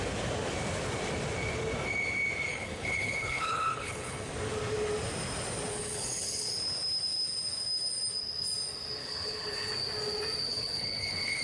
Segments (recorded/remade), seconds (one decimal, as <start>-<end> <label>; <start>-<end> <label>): 0.0-2.5 recorded; 2.5-4.3 remade; 4.3-5.7 recorded; 5.7-6.5 remade; 6.5-9.0 recorded; 9.0-9.7 remade; 9.7-10.5 recorded; 10.5-11.4 remade